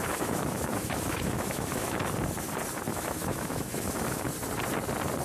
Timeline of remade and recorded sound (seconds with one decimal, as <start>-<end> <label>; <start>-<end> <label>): 0.0-2.0 remade; 2.0-2.9 recorded; 2.9-4.3 remade; 4.3-5.2 recorded